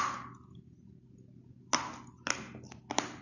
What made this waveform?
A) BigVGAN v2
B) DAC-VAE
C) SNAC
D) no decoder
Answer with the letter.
D